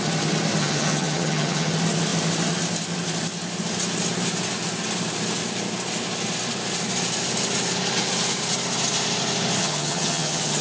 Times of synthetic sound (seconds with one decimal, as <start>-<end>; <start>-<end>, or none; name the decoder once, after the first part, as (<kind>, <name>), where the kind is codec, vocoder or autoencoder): 0.6-1.7 (vocoder, HiFi-GAN); 9.6-10.6